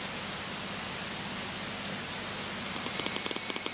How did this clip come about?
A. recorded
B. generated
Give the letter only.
A